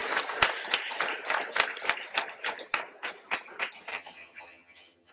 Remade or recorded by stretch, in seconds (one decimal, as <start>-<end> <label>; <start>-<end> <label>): 0.0-3.9 recorded; 3.9-5.1 remade